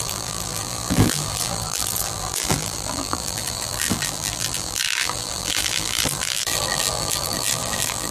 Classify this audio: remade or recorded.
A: remade